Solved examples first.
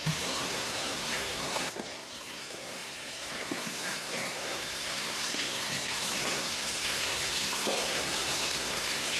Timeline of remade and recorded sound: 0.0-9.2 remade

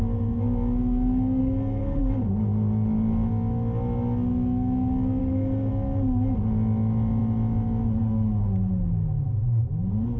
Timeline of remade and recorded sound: 0.0-1.4 recorded; 1.4-2.0 remade; 2.0-5.2 recorded; 5.2-5.7 remade; 5.7-10.2 recorded

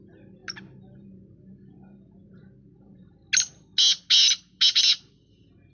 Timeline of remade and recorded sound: 0.0-5.7 recorded